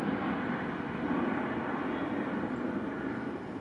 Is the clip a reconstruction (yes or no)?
no